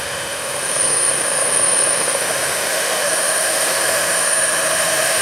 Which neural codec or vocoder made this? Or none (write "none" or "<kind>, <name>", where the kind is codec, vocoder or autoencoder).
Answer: autoencoder, DAC-VAE